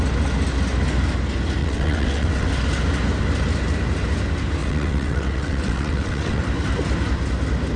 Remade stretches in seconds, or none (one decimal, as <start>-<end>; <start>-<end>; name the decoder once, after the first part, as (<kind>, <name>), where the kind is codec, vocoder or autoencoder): 1.6-2.5 (vocoder, WaveNeXt); 4.6-6.4